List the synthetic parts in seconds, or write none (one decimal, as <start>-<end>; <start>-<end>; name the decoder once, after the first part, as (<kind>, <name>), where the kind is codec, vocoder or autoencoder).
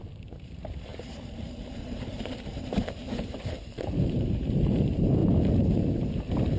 0.9-4.8 (vocoder, BigVGAN v2); 5.2-5.8